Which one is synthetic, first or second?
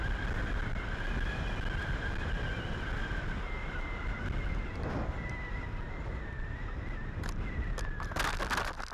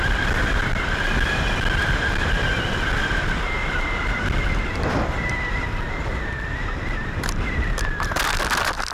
second